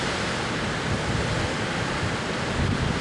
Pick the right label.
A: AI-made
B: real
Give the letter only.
B